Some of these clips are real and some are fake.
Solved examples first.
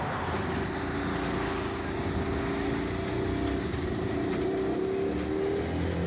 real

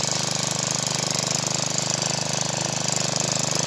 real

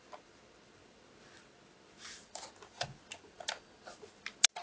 real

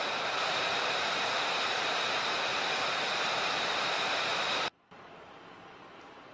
fake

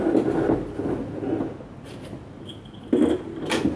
real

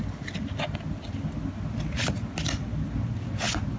real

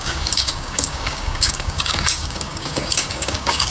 fake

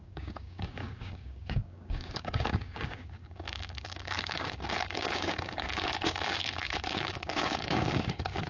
fake